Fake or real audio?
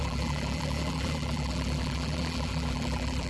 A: fake